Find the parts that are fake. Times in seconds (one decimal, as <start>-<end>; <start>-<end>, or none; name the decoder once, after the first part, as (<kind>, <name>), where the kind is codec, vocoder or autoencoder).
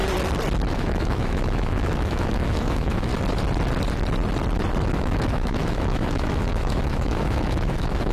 0.7-3.1 (autoencoder, DAC-VAE); 4.9-8.1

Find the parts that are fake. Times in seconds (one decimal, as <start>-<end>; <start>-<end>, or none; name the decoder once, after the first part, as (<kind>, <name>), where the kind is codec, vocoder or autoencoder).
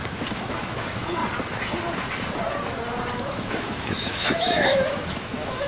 0.0-1.2 (autoencoder, DAC-VAE); 3.1-5.7